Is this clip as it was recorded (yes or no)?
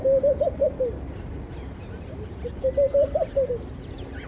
yes